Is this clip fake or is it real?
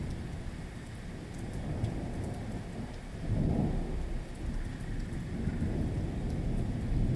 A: real